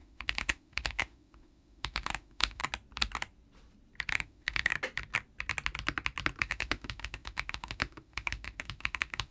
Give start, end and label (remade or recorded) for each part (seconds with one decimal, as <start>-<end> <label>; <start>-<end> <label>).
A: 0.0-2.6 remade; 2.6-4.1 recorded; 4.1-4.7 remade; 4.7-6.4 recorded; 6.4-9.3 remade